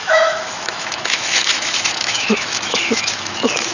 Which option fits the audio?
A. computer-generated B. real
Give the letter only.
A